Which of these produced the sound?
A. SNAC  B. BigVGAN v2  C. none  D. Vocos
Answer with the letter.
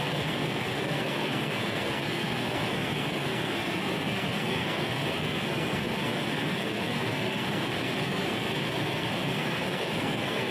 A